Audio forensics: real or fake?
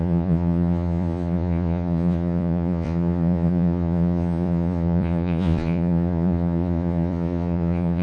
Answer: fake